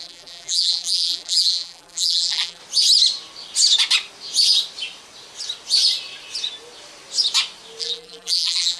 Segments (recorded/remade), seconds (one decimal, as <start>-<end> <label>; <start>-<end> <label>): 0.0-2.6 remade; 2.6-7.8 recorded; 7.8-8.8 remade